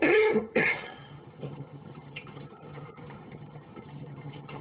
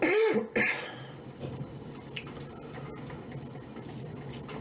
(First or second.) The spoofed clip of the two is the first